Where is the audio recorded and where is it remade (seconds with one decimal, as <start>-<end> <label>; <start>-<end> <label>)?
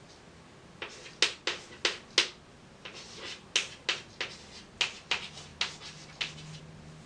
0.0-7.1 recorded